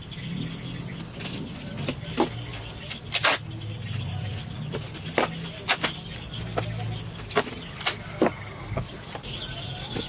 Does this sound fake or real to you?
real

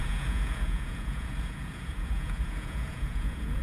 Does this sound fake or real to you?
fake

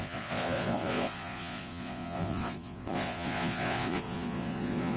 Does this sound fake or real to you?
fake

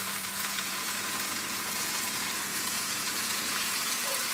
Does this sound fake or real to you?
fake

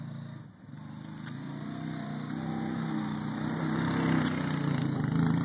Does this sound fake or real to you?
real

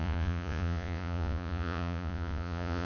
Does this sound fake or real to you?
fake